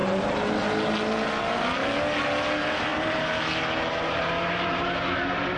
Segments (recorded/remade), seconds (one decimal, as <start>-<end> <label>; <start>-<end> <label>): 0.0-0.5 remade; 0.5-2.9 recorded; 2.9-5.6 remade